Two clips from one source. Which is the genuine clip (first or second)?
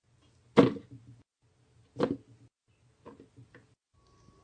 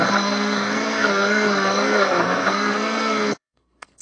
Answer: first